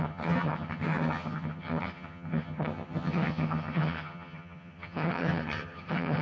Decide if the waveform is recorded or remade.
remade